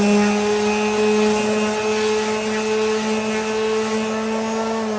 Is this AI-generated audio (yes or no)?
no